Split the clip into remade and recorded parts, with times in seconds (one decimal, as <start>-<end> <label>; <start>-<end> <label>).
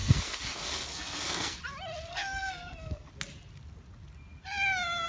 0.0-1.6 remade; 1.6-2.1 recorded; 2.1-3.1 remade; 3.1-5.1 recorded